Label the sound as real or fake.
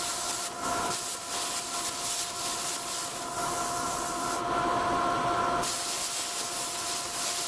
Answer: real